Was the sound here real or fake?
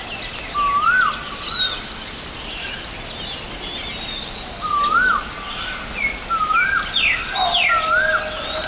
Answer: real